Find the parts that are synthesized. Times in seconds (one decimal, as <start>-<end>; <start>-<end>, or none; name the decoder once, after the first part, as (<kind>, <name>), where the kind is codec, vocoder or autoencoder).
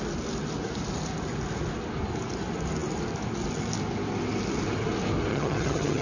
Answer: 5.3-6.0 (vocoder, HiFi-GAN)